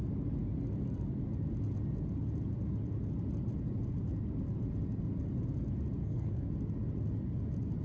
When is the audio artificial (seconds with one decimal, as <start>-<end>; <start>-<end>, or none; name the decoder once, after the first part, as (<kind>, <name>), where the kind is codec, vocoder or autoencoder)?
6.0-6.5 (codec, SNAC)